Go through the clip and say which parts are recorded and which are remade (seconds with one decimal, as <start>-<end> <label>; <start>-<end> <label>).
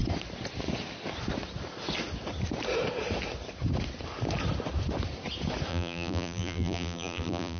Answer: 0.0-5.7 recorded; 5.7-7.6 remade